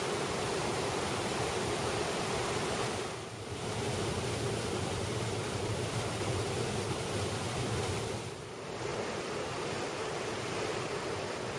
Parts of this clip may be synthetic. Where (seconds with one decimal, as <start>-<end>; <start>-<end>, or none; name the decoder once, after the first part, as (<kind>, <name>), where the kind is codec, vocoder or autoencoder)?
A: none